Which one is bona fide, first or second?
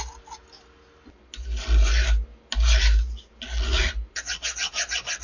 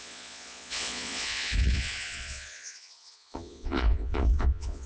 first